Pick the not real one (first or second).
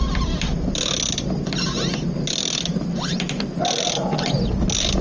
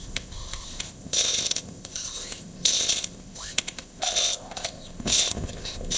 second